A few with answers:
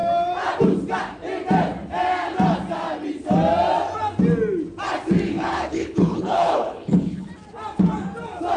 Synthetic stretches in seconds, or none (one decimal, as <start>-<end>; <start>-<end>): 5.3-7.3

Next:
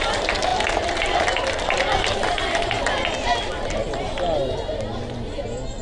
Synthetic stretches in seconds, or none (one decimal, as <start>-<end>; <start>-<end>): none

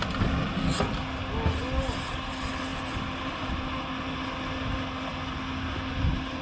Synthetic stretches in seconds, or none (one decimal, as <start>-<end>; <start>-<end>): none

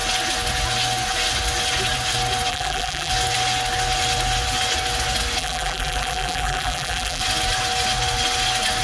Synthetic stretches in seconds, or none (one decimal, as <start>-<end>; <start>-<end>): 2.5-3.1; 5.4-7.2